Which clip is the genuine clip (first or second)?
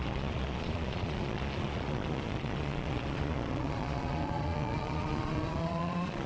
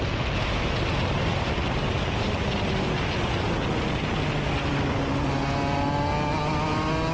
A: second